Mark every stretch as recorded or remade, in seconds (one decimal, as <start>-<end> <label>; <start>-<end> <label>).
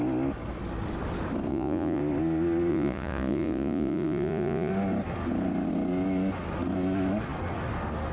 0.0-1.5 recorded; 1.5-2.0 remade; 2.0-2.7 recorded; 2.7-4.7 remade; 4.7-8.1 recorded